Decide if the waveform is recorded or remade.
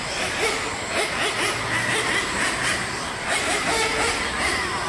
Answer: recorded